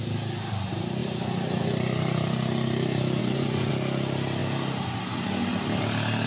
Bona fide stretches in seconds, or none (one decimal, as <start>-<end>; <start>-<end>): 0.0-3.2; 3.7-6.3